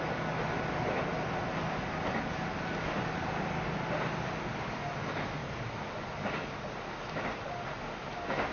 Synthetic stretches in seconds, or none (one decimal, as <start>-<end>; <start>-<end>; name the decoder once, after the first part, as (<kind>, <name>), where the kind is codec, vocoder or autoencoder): none